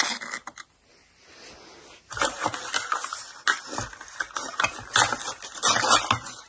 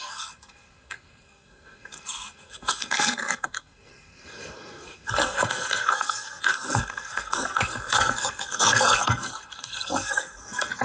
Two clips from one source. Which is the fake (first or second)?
second